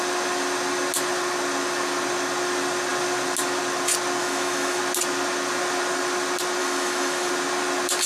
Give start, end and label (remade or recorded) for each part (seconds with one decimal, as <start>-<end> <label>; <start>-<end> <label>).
0.0-4.2 recorded; 4.2-4.8 remade; 4.8-6.6 recorded; 6.6-7.3 remade; 7.3-8.1 recorded